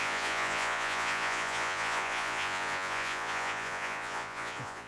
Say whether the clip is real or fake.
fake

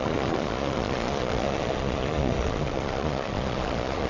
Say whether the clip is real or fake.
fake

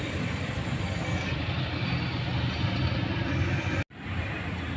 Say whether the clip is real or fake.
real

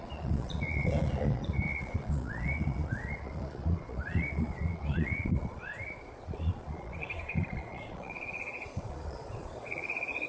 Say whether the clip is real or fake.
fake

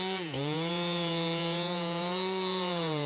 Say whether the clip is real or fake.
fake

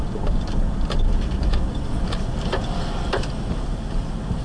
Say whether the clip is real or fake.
real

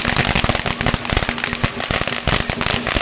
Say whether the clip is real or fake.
real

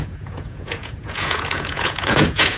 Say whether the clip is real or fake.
fake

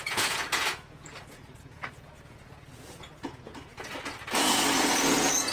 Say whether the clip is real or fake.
fake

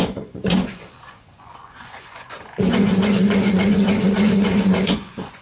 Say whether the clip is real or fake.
fake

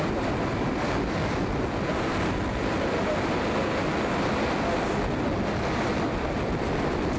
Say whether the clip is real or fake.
real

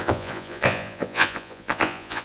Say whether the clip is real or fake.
fake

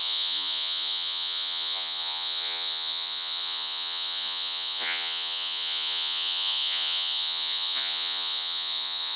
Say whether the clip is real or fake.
fake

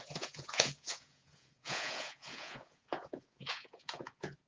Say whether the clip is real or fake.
fake